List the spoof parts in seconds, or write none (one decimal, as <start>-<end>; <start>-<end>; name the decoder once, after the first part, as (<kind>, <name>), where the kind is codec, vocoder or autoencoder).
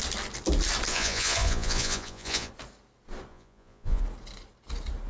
0.9-2.5 (vocoder, Vocos); 3.3-4.0